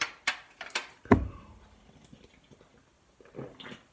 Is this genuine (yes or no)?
yes